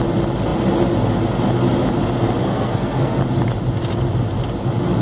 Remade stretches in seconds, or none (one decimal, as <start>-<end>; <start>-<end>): 2.4-3.2